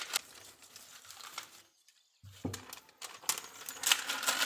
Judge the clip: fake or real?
real